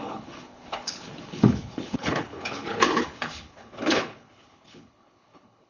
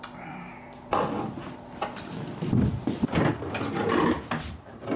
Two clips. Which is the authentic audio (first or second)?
second